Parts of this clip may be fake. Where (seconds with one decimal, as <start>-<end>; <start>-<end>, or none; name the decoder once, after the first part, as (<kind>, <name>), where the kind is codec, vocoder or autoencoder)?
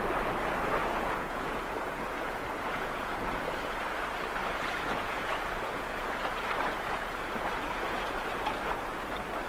0.8-3.9 (vocoder, Vocos); 4.4-8.1